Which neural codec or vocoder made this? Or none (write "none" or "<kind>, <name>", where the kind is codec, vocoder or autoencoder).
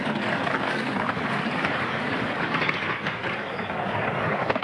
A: codec, DAC